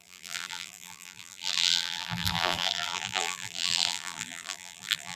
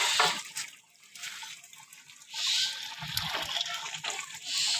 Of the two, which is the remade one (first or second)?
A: first